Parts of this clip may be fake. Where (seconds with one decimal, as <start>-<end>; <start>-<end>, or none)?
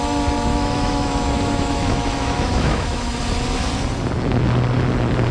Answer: 0.5-3.1